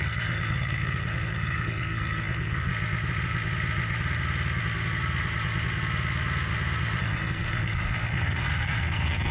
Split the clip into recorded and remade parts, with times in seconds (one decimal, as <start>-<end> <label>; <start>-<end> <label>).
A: 0.0-2.7 remade; 2.7-7.0 recorded; 7.0-9.3 remade